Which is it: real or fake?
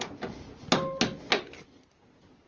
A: real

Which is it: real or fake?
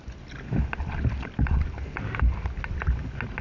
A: real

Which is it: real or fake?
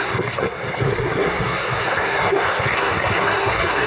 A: fake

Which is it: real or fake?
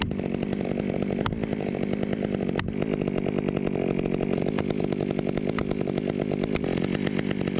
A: real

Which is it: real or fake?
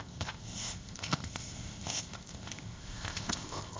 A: fake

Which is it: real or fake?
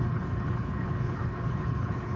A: fake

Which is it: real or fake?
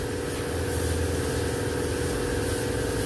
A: real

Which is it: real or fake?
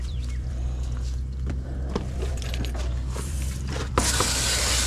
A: fake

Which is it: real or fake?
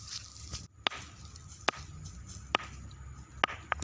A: real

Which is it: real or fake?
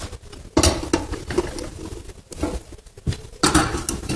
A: real